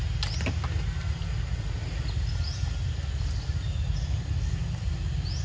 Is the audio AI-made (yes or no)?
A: no